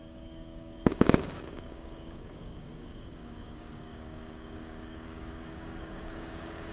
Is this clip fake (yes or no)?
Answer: yes